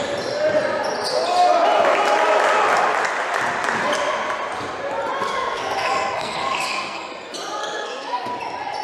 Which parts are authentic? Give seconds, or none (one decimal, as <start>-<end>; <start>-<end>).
0.0-5.2; 7.1-7.6; 8.3-8.8